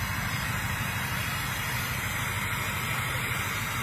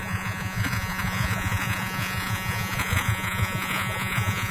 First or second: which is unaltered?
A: first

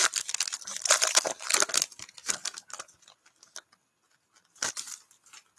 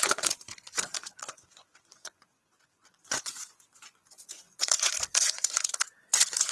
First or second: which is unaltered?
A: first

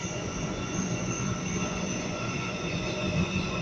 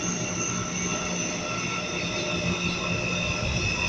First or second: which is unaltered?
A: second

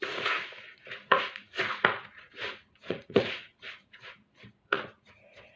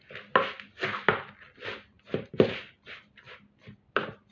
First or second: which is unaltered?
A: second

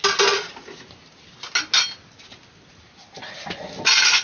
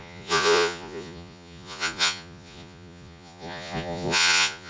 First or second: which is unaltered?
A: first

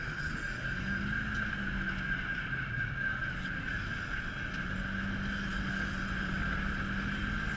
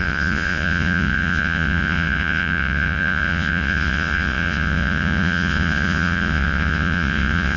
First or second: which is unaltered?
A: first